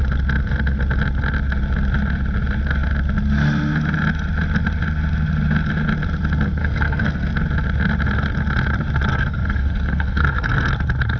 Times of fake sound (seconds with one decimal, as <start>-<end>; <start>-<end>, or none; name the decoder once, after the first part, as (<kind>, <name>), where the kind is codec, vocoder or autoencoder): 6.6-7.3 (codec, SNAC); 9.1-10.7